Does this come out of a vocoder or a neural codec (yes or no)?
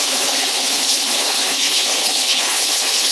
yes